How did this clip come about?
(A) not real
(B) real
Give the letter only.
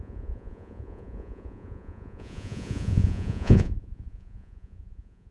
A